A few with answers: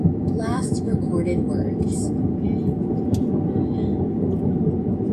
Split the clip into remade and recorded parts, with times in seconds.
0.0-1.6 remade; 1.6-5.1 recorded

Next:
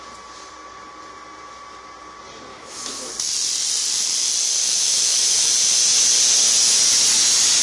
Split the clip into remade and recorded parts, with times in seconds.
0.0-2.5 recorded; 2.5-3.1 remade; 3.1-4.6 recorded; 4.6-5.5 remade; 5.5-7.6 recorded

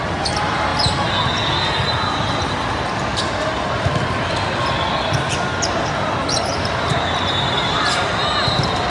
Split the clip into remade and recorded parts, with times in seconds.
0.0-8.9 recorded

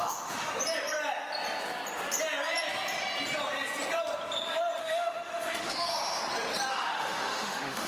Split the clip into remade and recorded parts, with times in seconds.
0.0-0.5 remade; 0.5-4.8 recorded; 4.8-6.2 remade; 6.2-6.7 recorded; 6.7-7.9 remade

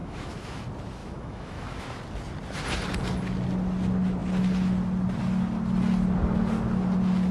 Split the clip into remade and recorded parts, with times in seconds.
0.0-0.6 remade; 0.6-1.0 recorded; 1.0-2.0 remade; 2.0-7.3 recorded

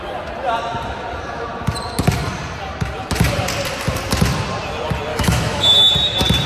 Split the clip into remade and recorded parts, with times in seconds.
0.0-5.1 recorded; 5.1-5.9 remade; 5.9-6.5 recorded